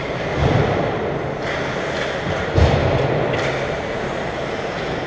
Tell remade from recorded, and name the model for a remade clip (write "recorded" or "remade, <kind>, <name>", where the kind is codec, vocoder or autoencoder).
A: recorded